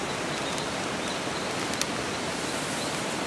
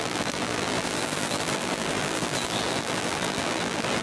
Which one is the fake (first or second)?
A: second